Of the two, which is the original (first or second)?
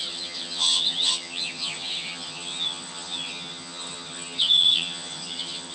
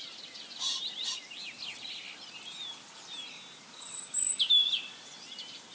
second